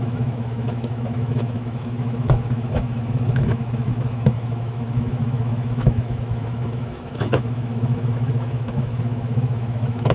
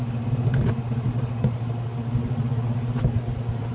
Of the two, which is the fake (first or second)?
first